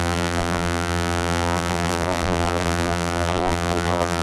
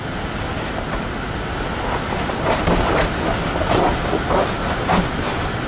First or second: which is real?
second